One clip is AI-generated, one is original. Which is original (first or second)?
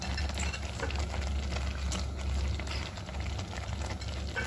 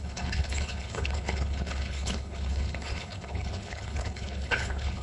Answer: first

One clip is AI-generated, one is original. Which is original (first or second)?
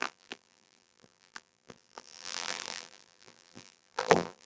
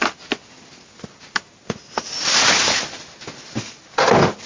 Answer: second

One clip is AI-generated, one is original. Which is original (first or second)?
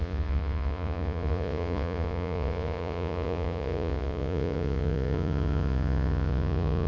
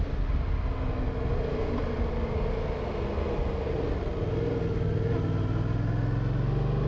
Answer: second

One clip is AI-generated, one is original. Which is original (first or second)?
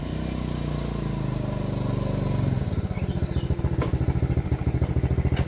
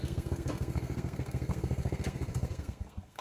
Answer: first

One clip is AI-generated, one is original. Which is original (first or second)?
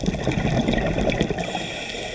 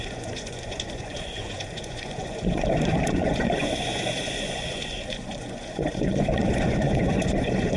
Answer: first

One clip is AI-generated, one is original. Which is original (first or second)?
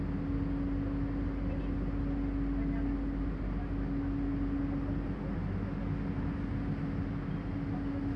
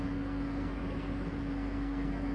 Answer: first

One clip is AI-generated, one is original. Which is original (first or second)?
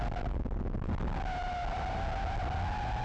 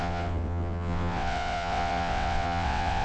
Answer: first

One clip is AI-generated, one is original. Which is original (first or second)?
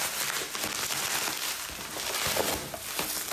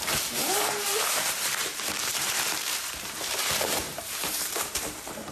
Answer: first